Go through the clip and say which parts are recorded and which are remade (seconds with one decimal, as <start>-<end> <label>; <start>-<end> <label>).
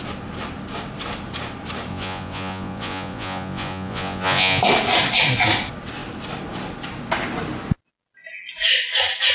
0.0-1.9 recorded; 1.9-4.6 remade; 4.6-9.3 recorded